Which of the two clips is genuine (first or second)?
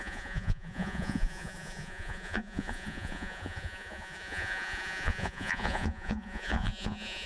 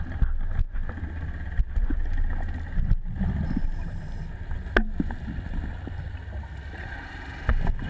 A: second